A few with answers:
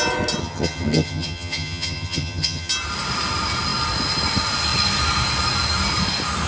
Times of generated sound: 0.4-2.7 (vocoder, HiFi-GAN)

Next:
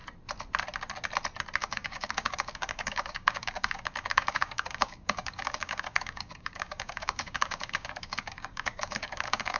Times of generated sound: 1.6-9.6 (codec, DAC)

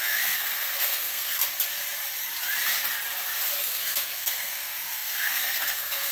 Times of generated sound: 0.0-1.4 (codec, SNAC); 3.6-6.1

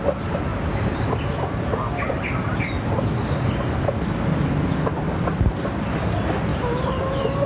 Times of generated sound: 6.5-7.0 (vocoder, BigVGAN v2)

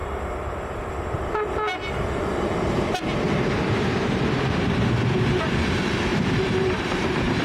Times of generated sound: 0.0-7.4 (vocoder, BigVGAN v2)